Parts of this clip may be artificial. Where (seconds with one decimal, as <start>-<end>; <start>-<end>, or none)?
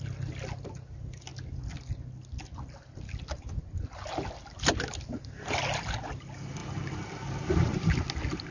none